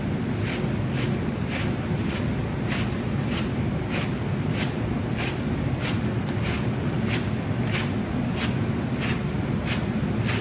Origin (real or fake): real